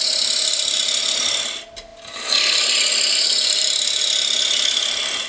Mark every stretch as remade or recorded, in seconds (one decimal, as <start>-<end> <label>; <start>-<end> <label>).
0.0-5.3 recorded